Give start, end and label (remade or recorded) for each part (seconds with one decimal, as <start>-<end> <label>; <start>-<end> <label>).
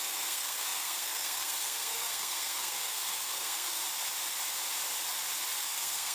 0.0-3.8 remade; 3.8-5.6 recorded; 5.6-6.1 remade